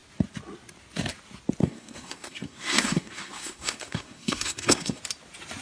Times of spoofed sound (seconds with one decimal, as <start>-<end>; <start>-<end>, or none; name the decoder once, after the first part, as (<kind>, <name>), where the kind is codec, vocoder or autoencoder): 1.6-5.0 (codec, SNAC)